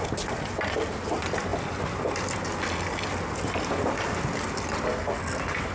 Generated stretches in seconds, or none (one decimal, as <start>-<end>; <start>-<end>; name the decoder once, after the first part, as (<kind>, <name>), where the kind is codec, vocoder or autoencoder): none